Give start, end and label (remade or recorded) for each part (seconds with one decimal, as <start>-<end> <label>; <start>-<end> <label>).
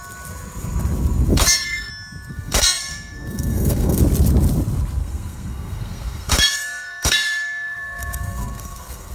0.0-1.3 recorded; 1.3-1.9 remade; 1.9-2.3 recorded; 2.3-4.0 remade; 4.0-5.0 recorded; 5.0-9.1 remade